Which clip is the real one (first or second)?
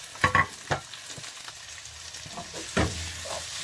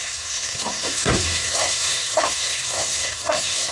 first